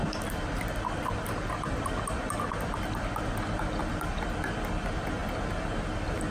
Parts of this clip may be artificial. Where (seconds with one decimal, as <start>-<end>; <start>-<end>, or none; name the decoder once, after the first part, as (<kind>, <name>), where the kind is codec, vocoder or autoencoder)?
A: 0.0-5.2 (vocoder, BigVGAN v2)